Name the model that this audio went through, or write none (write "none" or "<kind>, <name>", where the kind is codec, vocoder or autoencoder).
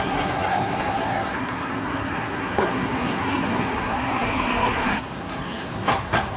codec, SNAC